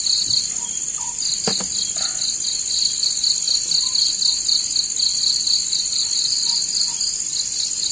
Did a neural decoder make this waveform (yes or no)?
no